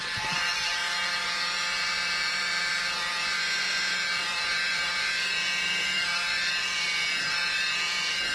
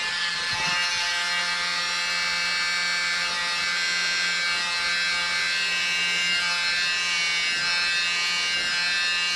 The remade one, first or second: first